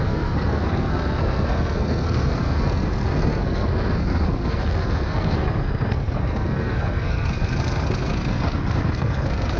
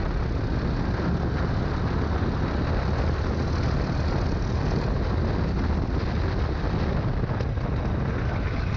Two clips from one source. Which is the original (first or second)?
second